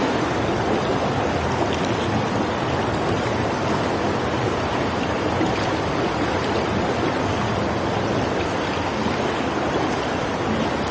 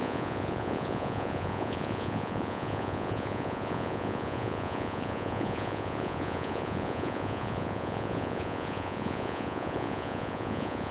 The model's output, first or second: second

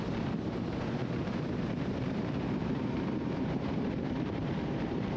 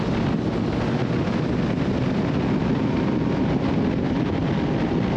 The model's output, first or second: first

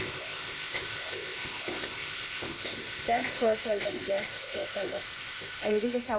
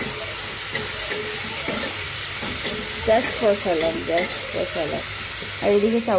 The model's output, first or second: first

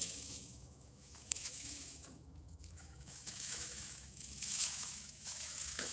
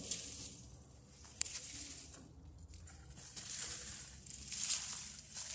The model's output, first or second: first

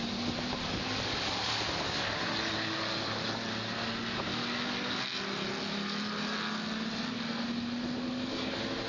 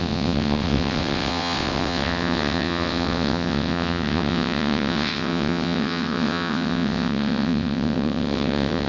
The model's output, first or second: second